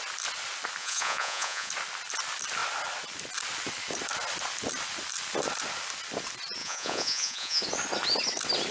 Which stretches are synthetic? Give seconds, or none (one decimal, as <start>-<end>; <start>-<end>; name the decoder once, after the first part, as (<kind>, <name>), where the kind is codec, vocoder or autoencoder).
0.8-1.7 (vocoder, Vocos); 6.6-7.6